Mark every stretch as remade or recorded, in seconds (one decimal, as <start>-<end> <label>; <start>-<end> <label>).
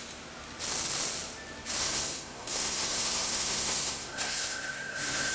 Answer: 0.0-1.8 recorded; 1.8-5.3 remade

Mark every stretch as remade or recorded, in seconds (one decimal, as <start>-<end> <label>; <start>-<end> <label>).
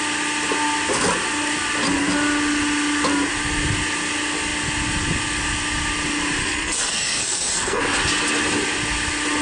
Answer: 0.0-6.4 recorded; 6.4-7.8 remade; 7.8-9.4 recorded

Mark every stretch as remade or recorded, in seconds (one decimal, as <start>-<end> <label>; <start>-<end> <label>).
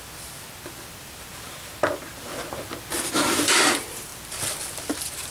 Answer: 0.0-1.0 recorded; 1.0-2.3 remade; 2.3-3.5 recorded; 3.5-4.1 remade; 4.1-4.8 recorded; 4.8-5.3 remade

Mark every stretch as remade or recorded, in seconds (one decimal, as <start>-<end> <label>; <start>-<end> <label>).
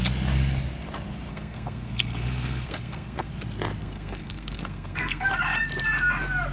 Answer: 0.0-1.3 recorded; 1.3-3.3 remade; 3.3-3.8 recorded; 3.8-5.3 remade; 5.3-6.5 recorded